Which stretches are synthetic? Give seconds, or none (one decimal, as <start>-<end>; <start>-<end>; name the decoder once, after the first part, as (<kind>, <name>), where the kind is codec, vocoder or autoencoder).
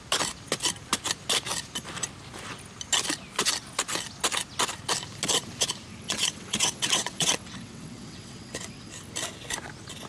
5.9-8.9 (vocoder, WaveNeXt)